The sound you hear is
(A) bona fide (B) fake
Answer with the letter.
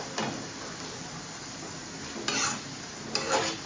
A